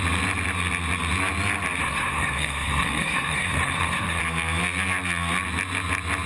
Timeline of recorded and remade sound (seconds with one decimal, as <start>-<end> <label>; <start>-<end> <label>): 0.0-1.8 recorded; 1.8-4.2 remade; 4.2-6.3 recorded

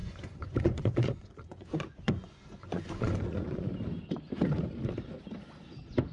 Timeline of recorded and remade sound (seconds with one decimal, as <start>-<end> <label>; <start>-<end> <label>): 0.0-3.7 remade; 3.7-6.1 recorded

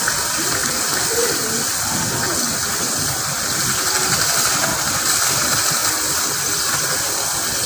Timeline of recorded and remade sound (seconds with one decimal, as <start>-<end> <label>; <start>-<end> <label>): 0.0-0.6 recorded; 0.6-1.9 remade; 1.9-7.7 recorded

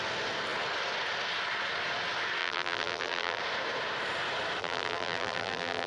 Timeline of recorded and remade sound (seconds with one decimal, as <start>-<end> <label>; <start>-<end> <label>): 0.0-2.4 recorded; 2.4-3.4 remade; 3.4-4.6 recorded; 4.6-5.9 remade

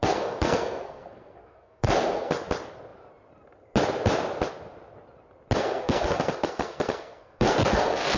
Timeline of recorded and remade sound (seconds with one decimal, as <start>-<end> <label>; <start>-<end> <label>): 0.0-2.3 remade; 2.3-5.6 recorded; 5.6-8.2 remade

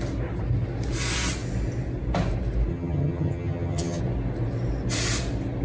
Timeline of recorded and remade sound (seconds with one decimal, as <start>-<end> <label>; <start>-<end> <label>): 0.0-2.7 recorded; 2.7-4.0 remade; 4.0-5.6 recorded

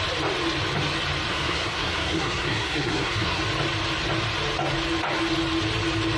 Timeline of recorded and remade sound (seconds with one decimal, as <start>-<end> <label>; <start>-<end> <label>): 0.0-1.3 recorded; 1.3-3.4 remade; 3.4-6.2 recorded

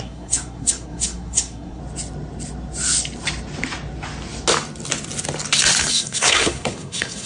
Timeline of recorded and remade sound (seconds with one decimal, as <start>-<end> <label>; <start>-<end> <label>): 0.0-1.8 remade; 1.8-5.9 recorded; 5.9-7.3 remade